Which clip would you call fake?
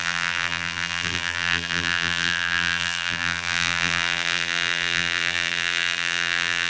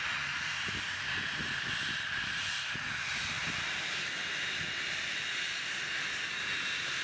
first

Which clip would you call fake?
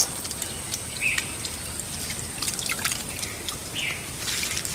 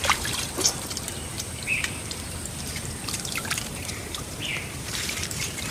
second